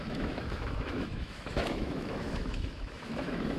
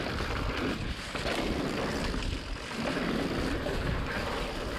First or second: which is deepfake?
first